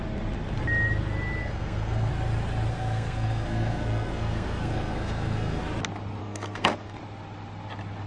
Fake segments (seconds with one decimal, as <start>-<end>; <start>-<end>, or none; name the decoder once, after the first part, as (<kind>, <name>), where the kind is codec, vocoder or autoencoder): 1.4-2.1 (codec, SNAC); 2.7-5.6; 6.2-7.0